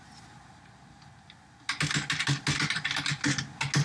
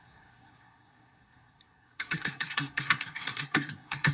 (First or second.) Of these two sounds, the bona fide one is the first